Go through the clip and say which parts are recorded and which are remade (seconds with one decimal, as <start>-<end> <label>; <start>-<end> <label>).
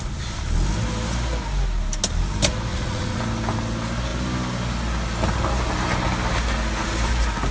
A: 0.0-2.7 recorded; 2.7-3.2 remade; 3.2-7.5 recorded